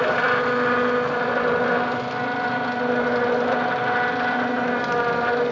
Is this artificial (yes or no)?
no